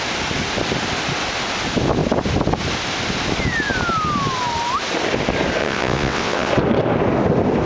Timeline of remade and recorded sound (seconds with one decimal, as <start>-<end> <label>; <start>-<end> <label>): 0.0-5.6 recorded; 5.6-6.5 remade; 6.5-7.7 recorded